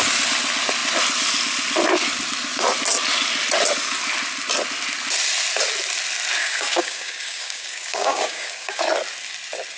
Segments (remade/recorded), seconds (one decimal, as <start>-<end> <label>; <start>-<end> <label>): 0.0-6.4 recorded; 6.4-8.8 remade; 8.8-9.8 recorded